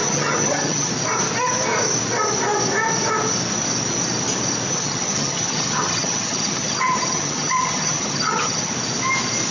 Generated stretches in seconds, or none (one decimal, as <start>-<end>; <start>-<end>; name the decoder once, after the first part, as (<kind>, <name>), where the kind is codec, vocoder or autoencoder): 0.0-0.9 (vocoder, HiFi-GAN); 4.7-8.7